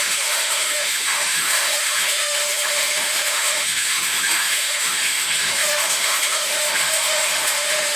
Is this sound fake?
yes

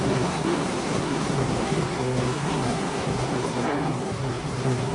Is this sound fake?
yes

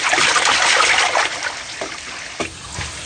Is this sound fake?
no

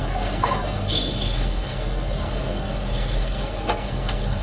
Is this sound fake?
yes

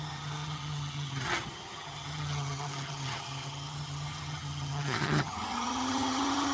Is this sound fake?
yes